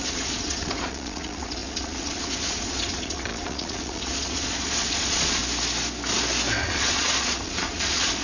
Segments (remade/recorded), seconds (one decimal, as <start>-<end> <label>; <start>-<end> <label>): 0.0-5.4 remade; 5.4-6.6 recorded; 6.6-8.2 remade